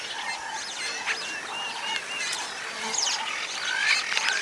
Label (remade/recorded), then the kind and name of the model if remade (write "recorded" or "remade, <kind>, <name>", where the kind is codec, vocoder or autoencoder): recorded